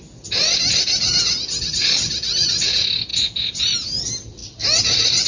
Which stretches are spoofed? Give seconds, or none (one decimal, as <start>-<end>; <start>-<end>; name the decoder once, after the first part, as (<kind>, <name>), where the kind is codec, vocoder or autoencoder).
4.4-5.3 (vocoder, BigVGAN v2)